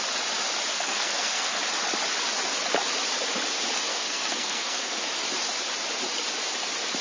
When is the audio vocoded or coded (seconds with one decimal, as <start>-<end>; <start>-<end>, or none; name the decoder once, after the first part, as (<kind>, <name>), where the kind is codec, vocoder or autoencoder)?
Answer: 0.7-1.6 (codec, SNAC); 3.9-5.0